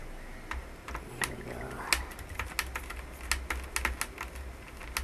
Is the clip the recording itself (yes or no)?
yes